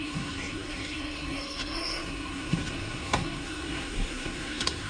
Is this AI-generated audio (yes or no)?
yes